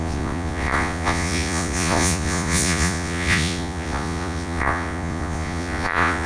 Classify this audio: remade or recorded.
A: remade